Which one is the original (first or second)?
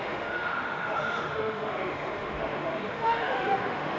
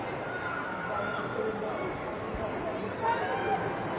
second